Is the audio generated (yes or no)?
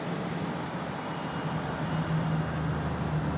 no